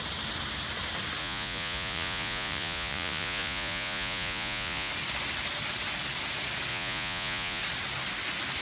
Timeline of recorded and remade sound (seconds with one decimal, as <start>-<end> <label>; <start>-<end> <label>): 0.0-1.2 recorded; 1.2-4.9 remade; 4.9-6.7 recorded; 6.7-7.6 remade; 7.6-8.6 recorded